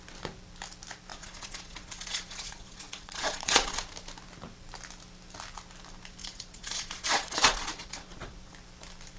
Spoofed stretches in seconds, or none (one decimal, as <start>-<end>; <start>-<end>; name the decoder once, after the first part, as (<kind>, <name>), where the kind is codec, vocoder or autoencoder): 1.1-3.9 (vocoder, Vocos); 6.2-8.5